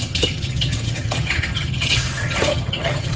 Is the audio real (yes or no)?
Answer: no